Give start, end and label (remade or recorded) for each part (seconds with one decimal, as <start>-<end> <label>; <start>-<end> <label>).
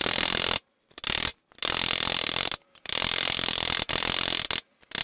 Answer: 0.0-5.0 recorded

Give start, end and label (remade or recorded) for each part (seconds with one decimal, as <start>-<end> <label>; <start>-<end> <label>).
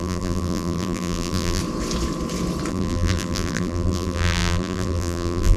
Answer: 0.0-1.6 remade; 1.6-2.7 recorded; 2.7-5.6 remade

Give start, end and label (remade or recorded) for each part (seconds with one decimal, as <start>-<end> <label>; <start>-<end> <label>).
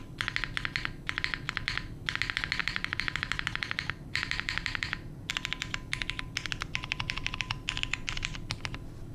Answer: 0.0-2.6 recorded; 2.6-5.3 remade; 5.3-9.1 recorded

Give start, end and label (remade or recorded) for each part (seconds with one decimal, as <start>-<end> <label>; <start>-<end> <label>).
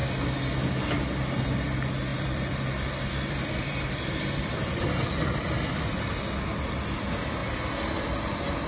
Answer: 0.0-2.1 recorded; 2.1-6.1 remade; 6.1-8.7 recorded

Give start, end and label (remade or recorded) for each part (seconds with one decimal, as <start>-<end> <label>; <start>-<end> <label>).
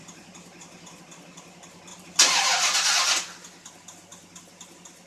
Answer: 0.0-1.0 remade; 1.0-1.9 recorded; 1.9-2.4 remade; 2.4-5.1 recorded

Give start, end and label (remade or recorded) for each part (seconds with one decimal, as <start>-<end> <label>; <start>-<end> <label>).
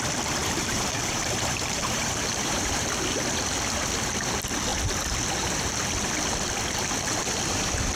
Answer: 0.0-0.4 recorded; 0.4-2.9 remade; 2.9-8.0 recorded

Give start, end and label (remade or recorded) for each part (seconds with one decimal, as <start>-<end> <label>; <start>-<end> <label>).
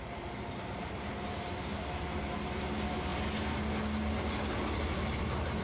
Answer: 0.0-5.6 recorded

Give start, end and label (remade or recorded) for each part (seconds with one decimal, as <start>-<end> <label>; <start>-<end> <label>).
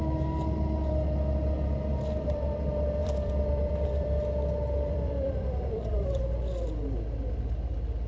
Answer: 0.0-3.0 recorded; 3.0-6.2 remade; 6.2-8.1 recorded